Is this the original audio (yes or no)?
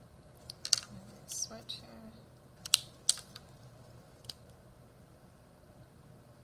yes